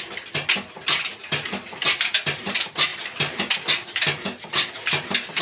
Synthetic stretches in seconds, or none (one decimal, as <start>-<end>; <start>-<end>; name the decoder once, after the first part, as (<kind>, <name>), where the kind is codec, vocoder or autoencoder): 2.9-3.5 (vocoder, BigVGAN v2)